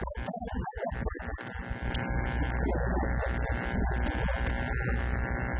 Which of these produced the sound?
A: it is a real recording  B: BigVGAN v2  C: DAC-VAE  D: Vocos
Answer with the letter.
A